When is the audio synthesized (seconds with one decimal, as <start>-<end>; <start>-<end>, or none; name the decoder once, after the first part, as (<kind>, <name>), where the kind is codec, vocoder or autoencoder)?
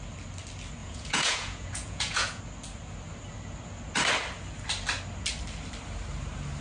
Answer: 0.8-2.4 (vocoder, Vocos)